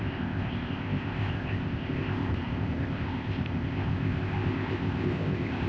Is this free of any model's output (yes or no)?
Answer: no